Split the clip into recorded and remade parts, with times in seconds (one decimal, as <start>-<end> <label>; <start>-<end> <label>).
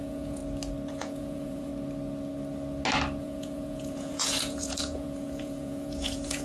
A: 0.0-0.4 remade; 0.4-0.9 recorded; 0.9-1.7 remade; 1.7-3.2 recorded; 3.2-6.4 remade